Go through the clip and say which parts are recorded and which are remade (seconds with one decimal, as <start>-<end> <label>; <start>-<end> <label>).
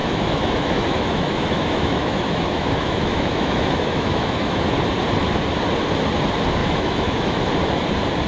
0.0-4.7 remade; 4.7-6.6 recorded; 6.6-7.5 remade; 7.5-8.3 recorded